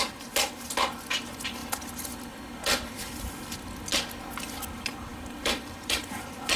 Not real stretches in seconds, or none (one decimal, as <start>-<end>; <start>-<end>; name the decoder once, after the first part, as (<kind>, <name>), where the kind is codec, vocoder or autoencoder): 1.6-3.4 (vocoder, BigVGAN v2); 5.1-6.0